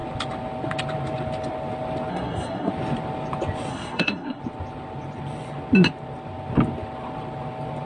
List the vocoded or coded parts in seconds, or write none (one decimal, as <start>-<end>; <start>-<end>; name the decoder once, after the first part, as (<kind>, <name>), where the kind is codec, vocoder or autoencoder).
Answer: 2.1-2.7 (codec, SNAC); 3.7-4.4